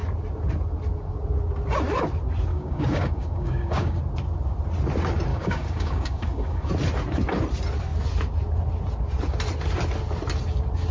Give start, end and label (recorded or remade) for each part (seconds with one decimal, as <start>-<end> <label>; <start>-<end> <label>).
0.0-2.5 recorded; 2.5-4.0 remade; 4.0-5.3 recorded; 5.3-6.7 remade; 6.7-10.9 recorded